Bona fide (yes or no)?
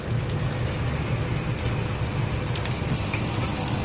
yes